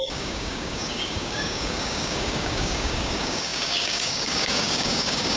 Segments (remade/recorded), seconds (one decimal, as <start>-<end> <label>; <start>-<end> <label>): 0.0-5.4 remade